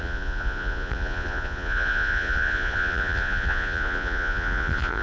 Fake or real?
fake